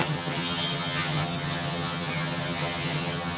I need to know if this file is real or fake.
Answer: fake